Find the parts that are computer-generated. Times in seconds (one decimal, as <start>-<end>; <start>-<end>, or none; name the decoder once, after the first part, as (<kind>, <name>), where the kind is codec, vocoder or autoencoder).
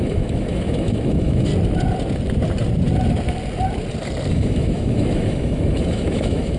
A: 0.0-1.5 (autoencoder, DAC-VAE); 4.3-6.6